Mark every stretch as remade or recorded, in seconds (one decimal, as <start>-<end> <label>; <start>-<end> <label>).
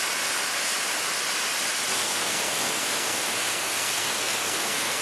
0.0-1.9 recorded; 1.9-5.0 remade